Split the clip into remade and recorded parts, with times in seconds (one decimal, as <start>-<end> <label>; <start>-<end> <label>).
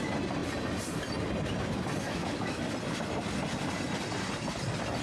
0.0-2.0 recorded; 2.0-2.6 remade; 2.6-5.0 recorded